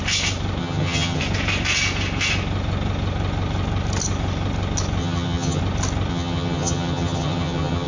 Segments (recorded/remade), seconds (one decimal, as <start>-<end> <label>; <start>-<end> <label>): 0.0-0.6 recorded; 0.6-1.2 remade; 1.2-5.0 recorded; 5.0-5.6 remade; 5.6-6.1 recorded; 6.1-7.9 remade